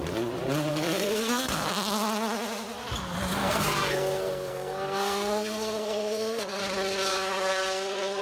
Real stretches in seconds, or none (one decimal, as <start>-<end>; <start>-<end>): 0.0-0.7; 1.7-3.4; 6.6-7.1

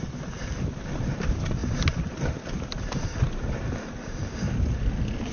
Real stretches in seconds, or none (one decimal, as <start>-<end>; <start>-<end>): 0.0-5.3